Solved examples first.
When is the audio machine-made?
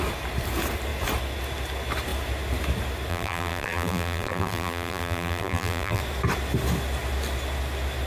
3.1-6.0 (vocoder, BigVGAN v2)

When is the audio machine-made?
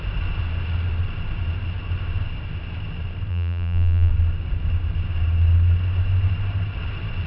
3.3-4.1 (vocoder, BigVGAN v2)